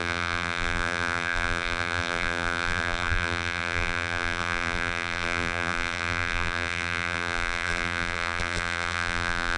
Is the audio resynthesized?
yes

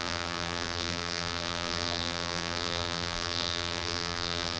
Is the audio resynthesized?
yes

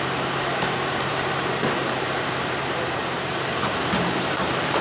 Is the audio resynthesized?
yes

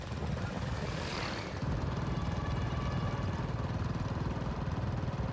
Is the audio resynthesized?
no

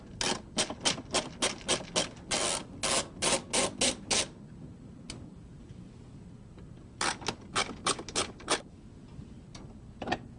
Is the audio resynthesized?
no